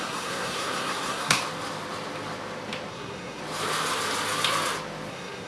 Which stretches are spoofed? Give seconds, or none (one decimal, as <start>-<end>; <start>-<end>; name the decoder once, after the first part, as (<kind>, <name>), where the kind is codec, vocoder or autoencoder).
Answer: 0.0-1.4 (codec, SNAC); 2.9-3.4; 5.1-5.5